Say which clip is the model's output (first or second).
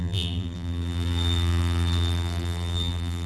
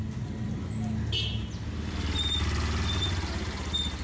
first